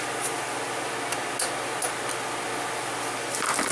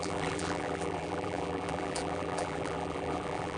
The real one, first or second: first